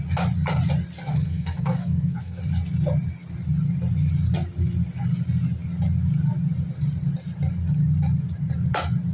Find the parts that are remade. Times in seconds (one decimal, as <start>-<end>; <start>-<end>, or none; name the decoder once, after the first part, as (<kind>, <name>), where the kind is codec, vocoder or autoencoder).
1.1-2.4 (codec, SNAC)